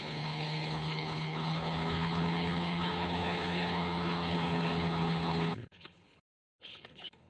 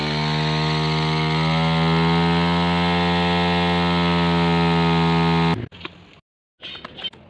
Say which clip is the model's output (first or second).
first